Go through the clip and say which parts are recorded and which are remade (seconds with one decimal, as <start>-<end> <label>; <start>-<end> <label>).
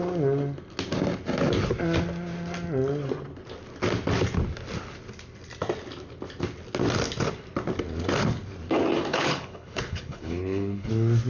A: 0.0-9.1 recorded; 9.1-10.9 remade; 10.9-11.3 recorded